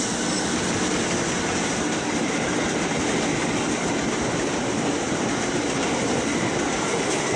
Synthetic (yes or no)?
no